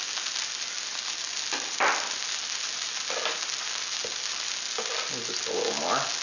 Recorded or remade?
recorded